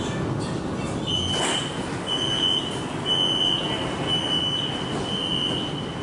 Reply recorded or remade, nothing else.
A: recorded